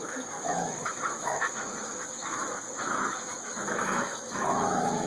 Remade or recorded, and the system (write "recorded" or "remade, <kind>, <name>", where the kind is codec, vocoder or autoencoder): remade, autoencoder, DAC-VAE